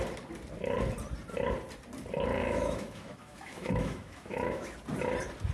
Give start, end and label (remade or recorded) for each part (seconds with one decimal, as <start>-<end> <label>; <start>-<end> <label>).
0.0-2.4 recorded; 2.4-4.7 remade; 4.7-5.5 recorded